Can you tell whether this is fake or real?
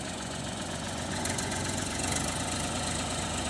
fake